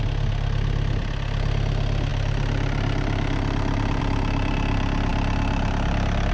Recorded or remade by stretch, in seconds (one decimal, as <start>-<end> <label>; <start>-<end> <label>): 0.0-6.3 recorded